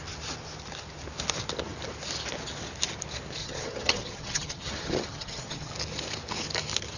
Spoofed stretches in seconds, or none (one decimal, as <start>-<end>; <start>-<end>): 3.4-5.7